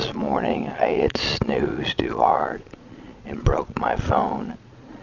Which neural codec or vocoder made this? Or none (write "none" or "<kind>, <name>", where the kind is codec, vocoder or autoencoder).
vocoder, Vocos